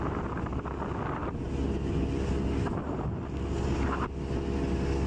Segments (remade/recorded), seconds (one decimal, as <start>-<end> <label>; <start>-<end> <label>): 0.0-5.1 recorded